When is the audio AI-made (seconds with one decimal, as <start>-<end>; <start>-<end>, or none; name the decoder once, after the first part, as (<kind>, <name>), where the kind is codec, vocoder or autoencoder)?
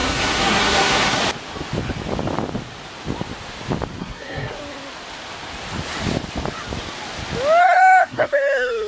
0.0-1.2 (codec, SNAC); 4.0-4.6; 7.6-8.9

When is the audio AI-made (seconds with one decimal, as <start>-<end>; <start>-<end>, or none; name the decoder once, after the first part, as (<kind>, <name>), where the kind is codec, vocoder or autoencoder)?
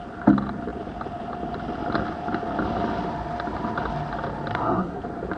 4.5-5.0 (codec, SNAC)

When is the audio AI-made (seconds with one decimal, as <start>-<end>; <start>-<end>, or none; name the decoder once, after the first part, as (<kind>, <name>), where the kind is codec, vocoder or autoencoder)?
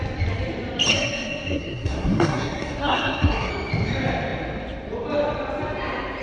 0.9-3.5 (codec, SNAC)